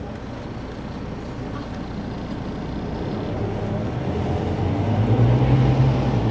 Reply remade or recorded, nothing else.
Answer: recorded